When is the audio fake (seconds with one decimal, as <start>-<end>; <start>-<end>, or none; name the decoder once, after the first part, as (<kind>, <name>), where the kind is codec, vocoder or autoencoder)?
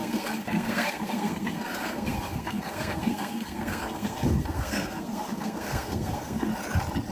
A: 0.0-6.5 (codec, SNAC)